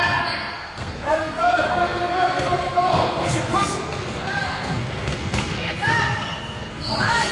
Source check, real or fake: fake